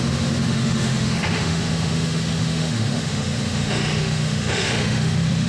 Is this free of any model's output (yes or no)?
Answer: no